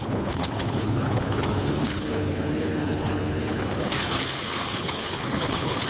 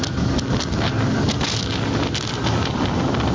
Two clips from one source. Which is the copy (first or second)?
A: first